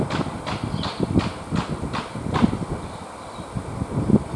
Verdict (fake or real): real